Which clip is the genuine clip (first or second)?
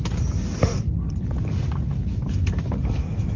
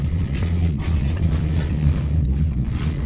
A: first